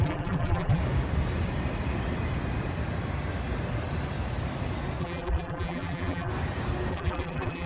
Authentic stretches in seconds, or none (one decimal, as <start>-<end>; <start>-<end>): 0.8-5.0; 6.3-6.9